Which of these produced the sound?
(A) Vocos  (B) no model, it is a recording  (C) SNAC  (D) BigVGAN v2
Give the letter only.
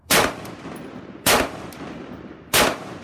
D